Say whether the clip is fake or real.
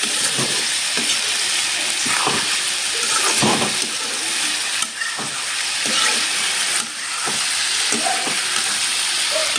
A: real